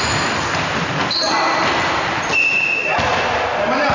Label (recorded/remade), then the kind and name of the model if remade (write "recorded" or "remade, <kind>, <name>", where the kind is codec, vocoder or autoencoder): recorded